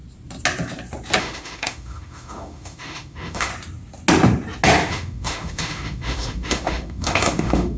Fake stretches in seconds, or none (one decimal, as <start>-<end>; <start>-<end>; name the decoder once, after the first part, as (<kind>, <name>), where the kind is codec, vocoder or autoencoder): 1.2-3.5 (autoencoder, DAC-VAE); 4.9-7.8

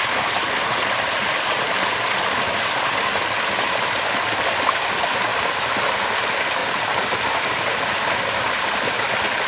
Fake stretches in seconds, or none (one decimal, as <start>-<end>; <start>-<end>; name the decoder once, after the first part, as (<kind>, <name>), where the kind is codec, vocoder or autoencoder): 6.6-9.0 (vocoder, BigVGAN v2)

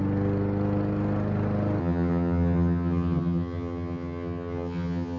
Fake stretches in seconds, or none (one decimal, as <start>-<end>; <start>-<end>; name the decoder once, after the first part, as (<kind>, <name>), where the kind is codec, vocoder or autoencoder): 1.8-5.2 (vocoder, HiFi-GAN)

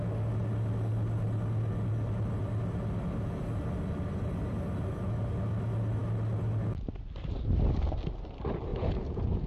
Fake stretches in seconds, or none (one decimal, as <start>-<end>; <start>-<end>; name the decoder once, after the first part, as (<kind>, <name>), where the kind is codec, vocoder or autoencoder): 8.7-9.5 (vocoder, Vocos)

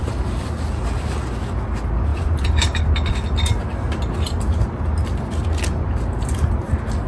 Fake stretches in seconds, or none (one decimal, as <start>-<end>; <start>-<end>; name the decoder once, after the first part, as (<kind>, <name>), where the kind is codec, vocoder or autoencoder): 2.1-2.8 (vocoder, BigVGAN v2)

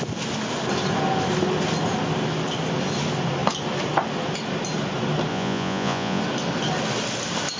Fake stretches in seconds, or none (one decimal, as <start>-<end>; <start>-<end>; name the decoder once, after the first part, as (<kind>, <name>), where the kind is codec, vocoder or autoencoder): 5.3-6.2 (vocoder, Vocos)

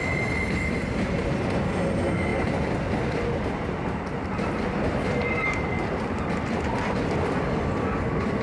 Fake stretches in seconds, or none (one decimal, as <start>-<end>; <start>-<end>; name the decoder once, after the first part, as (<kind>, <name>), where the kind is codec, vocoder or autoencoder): none